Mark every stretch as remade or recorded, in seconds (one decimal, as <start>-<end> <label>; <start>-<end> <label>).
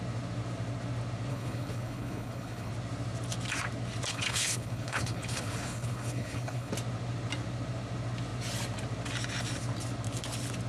0.0-1.3 recorded; 1.3-2.7 remade; 2.7-4.1 recorded; 4.1-6.7 remade; 6.7-10.7 recorded